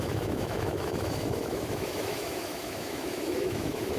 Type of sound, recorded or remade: remade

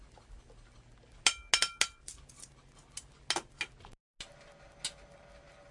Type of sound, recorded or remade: recorded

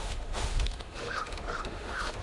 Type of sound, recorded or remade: remade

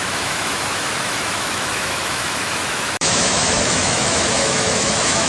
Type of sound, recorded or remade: remade